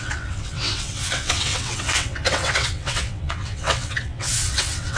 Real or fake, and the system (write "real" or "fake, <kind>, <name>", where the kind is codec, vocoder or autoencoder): fake, vocoder, WaveNeXt